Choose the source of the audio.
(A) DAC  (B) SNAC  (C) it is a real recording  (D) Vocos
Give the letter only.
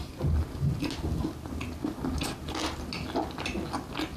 C